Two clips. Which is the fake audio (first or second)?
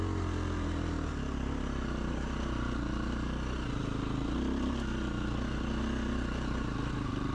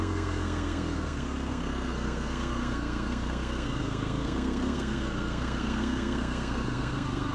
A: second